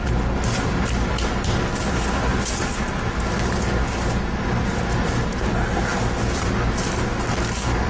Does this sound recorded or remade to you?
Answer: recorded